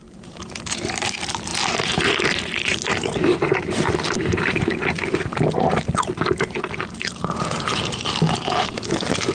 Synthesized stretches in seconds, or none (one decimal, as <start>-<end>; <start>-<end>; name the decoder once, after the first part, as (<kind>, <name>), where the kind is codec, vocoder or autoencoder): 0.0-8.1 (vocoder, BigVGAN v2); 8.6-9.3